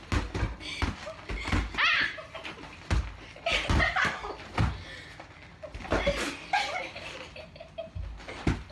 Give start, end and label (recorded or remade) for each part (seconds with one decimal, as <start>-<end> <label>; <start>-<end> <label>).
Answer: 0.0-8.7 recorded